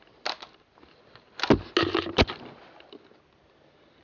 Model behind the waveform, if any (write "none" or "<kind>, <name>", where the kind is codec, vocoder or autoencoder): none